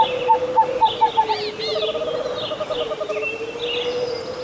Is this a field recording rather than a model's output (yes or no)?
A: yes